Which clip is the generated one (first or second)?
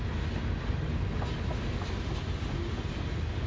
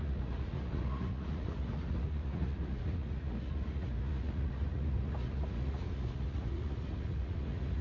second